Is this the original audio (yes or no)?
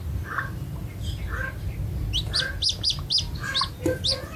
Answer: yes